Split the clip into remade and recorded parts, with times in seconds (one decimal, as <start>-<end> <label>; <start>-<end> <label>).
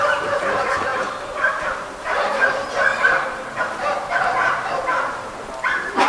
0.0-6.1 remade